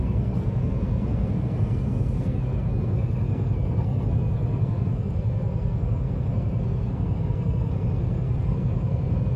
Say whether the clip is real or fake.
fake